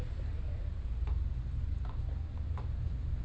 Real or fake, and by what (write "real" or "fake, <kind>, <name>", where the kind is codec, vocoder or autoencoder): real